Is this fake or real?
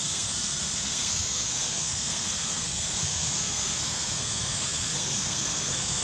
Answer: fake